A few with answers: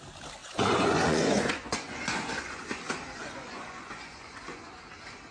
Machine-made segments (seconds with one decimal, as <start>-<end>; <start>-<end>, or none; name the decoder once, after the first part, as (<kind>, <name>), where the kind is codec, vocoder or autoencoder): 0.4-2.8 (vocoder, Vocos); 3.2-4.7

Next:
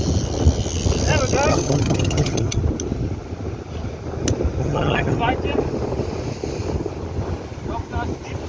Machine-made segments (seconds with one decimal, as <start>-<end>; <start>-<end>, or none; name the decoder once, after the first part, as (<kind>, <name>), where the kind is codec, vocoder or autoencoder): 1.5-2.6 (vocoder, HiFi-GAN); 4.6-5.2

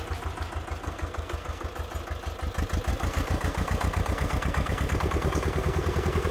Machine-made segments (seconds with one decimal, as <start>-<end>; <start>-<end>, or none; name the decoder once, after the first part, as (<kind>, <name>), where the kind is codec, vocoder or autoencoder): 0.8-1.7 (codec, SNAC); 2.9-6.3

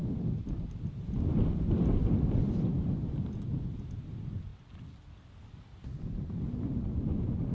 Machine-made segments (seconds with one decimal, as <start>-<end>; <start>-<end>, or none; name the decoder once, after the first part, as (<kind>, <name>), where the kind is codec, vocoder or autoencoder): none